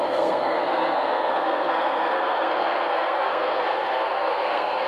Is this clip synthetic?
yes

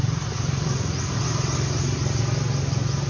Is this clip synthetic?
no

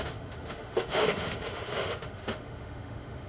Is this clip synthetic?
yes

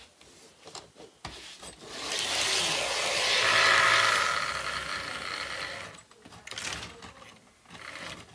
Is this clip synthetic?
no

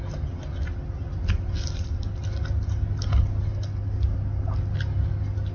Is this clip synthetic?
no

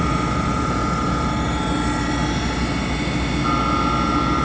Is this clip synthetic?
no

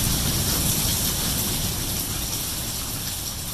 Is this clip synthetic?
no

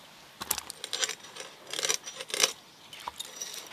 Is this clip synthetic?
no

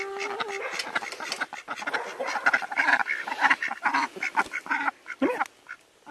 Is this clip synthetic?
no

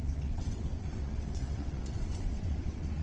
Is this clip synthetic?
yes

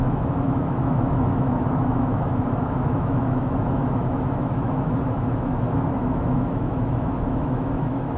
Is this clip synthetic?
yes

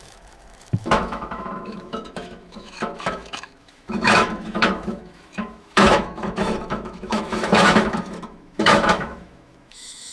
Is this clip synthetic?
yes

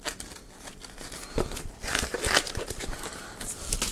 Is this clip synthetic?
no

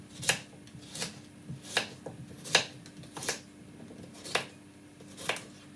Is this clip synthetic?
no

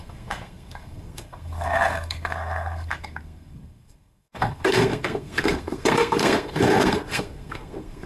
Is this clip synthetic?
yes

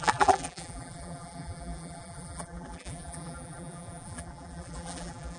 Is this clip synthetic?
yes